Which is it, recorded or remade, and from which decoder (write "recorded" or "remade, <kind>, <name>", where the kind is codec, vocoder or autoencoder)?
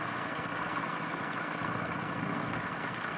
remade, codec, SNAC